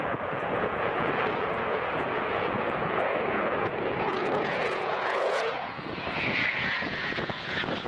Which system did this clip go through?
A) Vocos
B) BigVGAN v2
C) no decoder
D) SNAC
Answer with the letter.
A